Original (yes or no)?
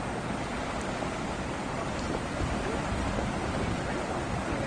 yes